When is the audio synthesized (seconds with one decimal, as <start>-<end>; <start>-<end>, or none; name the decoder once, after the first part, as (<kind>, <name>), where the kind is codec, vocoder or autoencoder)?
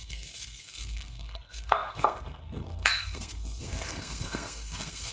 0.0-5.1 (codec, SNAC)